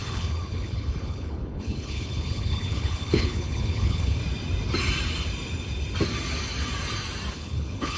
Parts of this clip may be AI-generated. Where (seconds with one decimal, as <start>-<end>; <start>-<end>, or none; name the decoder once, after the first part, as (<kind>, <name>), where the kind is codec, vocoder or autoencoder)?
0.0-4.2 (codec, HILCodec); 7.3-8.0